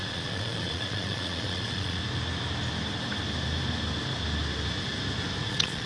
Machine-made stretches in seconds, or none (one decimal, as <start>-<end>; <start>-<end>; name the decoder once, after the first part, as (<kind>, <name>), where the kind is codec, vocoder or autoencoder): 0.0-2.0 (vocoder, Vocos); 5.5-5.9